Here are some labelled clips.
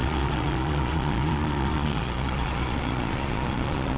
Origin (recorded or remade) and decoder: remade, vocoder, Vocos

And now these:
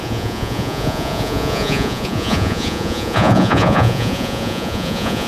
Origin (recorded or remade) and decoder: remade, vocoder, Vocos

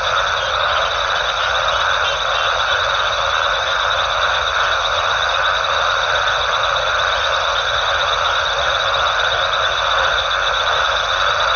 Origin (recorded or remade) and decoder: recorded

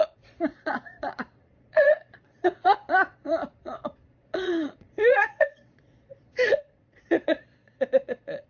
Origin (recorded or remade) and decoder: remade, vocoder, Vocos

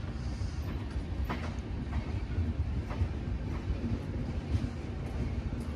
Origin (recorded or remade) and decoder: recorded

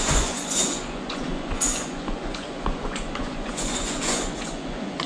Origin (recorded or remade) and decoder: remade, vocoder, Vocos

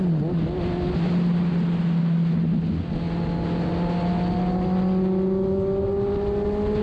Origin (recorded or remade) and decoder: recorded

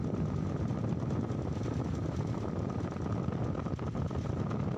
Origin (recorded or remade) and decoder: recorded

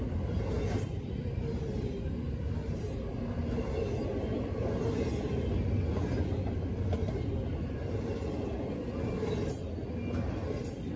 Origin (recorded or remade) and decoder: recorded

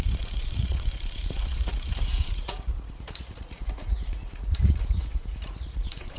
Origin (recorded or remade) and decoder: remade, vocoder, Vocos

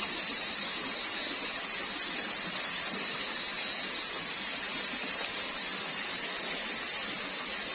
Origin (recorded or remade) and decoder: recorded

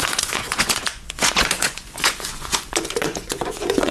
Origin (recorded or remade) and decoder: remade, vocoder, Vocos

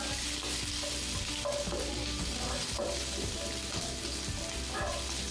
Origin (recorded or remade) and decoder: recorded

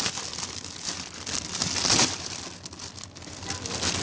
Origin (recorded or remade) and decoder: recorded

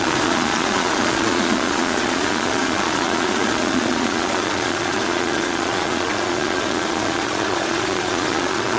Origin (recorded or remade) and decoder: remade, vocoder, Vocos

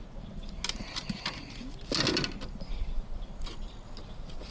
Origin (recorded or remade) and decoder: recorded